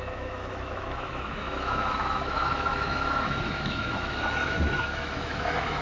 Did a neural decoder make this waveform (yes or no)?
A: yes